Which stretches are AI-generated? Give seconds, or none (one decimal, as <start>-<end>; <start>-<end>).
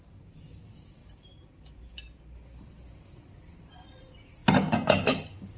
0.0-1.0; 2.6-4.4